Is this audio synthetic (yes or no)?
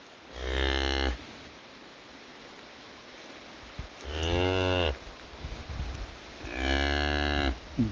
no